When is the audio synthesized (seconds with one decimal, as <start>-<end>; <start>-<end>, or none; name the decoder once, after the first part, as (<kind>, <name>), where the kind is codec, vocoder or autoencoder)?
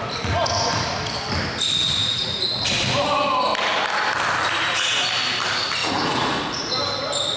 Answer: 2.0-2.5 (vocoder, Vocos); 5.8-6.4